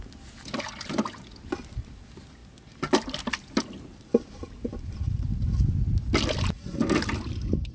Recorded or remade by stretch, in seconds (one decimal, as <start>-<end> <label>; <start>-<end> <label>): 0.0-7.7 recorded